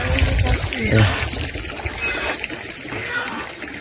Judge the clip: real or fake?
real